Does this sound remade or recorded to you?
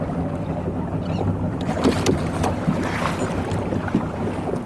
recorded